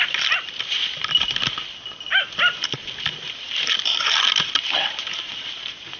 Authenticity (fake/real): real